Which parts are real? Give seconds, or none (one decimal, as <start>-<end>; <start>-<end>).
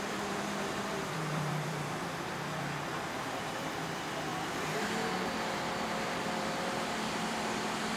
none